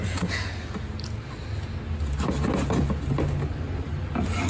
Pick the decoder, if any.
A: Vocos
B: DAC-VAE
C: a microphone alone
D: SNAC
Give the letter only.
C